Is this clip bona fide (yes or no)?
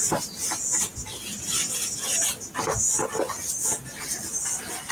yes